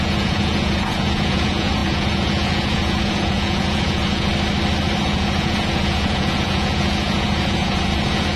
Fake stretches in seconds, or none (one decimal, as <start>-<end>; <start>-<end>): 0.0-4.3; 5.0-8.4